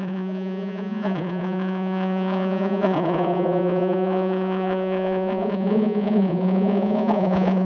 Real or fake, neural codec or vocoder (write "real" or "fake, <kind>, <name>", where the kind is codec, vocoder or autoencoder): fake, vocoder, Vocos